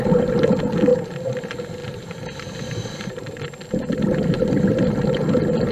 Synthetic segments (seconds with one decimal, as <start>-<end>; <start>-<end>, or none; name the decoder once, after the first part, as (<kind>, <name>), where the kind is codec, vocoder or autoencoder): 0.9-1.4 (vocoder, BigVGAN v2); 1.8-3.4